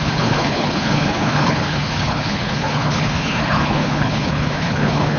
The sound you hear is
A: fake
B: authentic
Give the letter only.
A